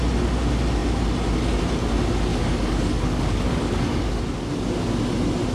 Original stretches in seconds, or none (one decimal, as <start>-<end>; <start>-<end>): 0.0-2.3; 4.2-5.5